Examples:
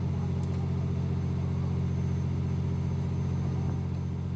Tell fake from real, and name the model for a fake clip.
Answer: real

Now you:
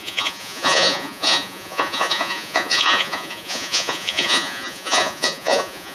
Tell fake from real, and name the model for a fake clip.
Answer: fake, vocoder, Vocos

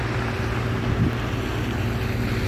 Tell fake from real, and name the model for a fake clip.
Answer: real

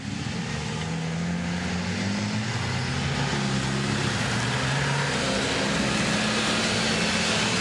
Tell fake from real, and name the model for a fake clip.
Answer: real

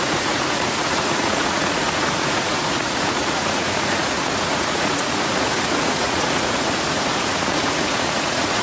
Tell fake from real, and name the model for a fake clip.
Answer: fake, vocoder, Vocos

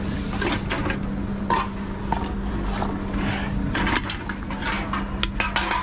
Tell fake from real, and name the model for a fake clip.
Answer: real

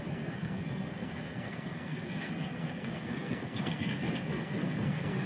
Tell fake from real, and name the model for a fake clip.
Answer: fake, codec, SNAC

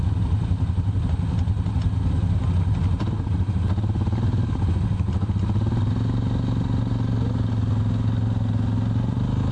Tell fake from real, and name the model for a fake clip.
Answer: real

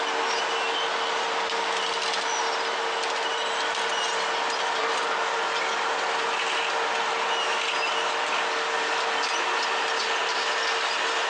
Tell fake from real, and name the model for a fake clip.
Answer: real